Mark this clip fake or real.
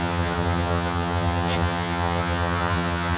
fake